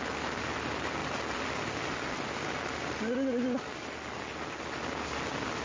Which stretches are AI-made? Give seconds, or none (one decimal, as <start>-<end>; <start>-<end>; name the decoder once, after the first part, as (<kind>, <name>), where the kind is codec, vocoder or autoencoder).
none